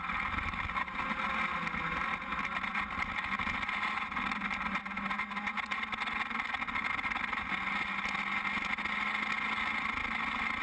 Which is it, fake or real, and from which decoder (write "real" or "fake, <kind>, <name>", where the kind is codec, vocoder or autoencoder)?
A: real